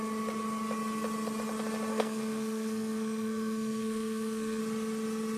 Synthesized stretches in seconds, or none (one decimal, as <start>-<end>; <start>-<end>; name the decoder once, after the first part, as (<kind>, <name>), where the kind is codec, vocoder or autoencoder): 1.9-4.6 (codec, SNAC)